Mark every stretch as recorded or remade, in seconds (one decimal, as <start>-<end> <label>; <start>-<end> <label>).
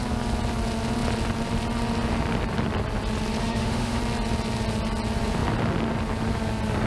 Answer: 0.0-3.4 recorded; 3.4-4.0 remade; 4.0-6.9 recorded